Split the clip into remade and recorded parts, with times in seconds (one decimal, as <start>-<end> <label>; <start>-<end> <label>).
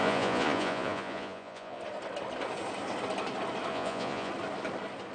0.0-1.8 remade; 1.8-3.7 recorded; 3.7-4.3 remade; 4.3-5.1 recorded